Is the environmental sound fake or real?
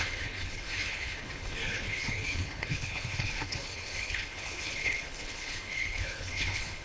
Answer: fake